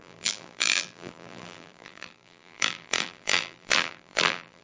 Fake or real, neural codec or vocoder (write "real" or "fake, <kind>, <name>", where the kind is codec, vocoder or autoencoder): fake, vocoder, BigVGAN v2